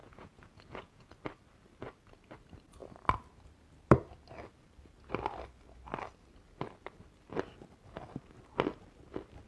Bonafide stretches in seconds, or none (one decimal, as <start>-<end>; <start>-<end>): 1.1-9.5